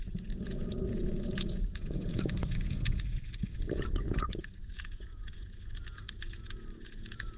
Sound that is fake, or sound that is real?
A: fake